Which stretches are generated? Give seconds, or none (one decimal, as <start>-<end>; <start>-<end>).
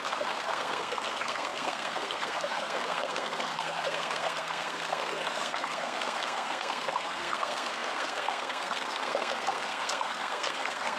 0.0-11.0